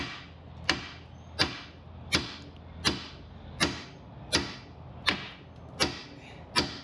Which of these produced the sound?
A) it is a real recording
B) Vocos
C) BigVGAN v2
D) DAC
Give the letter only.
A